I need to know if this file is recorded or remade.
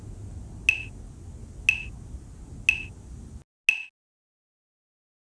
recorded